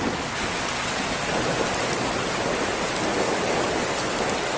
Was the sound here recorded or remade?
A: recorded